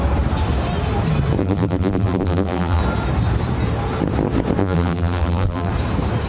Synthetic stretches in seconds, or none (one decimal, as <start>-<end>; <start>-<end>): 1.4-2.8; 4.6-5.7